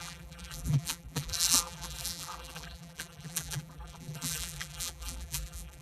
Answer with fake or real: fake